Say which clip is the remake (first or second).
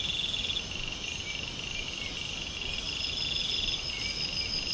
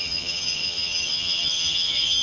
second